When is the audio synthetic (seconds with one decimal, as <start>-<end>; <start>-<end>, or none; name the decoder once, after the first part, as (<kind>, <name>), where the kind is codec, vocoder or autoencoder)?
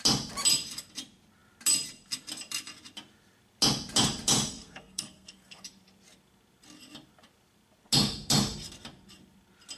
4.5-5.6 (codec, SNAC)